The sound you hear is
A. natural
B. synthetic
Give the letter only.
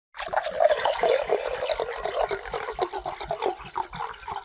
A